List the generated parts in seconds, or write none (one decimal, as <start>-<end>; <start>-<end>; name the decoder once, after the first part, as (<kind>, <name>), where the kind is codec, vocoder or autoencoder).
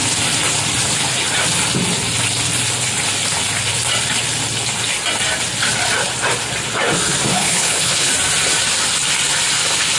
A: 7.3-8.1 (codec, HILCodec)